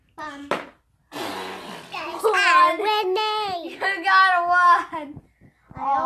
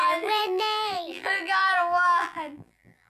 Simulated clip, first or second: second